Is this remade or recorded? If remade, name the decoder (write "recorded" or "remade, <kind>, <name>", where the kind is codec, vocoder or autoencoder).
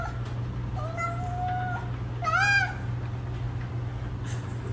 recorded